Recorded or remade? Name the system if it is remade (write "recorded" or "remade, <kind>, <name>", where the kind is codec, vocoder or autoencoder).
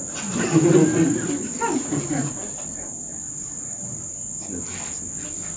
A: recorded